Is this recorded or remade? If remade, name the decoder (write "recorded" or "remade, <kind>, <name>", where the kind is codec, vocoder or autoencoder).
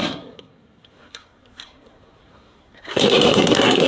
remade, codec, SNAC